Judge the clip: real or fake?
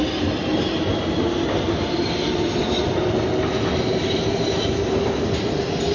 real